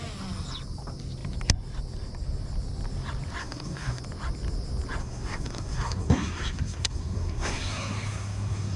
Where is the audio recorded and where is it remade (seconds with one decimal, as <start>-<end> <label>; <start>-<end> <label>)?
0.0-3.4 recorded; 3.4-4.0 remade; 4.0-5.0 recorded; 5.0-8.8 remade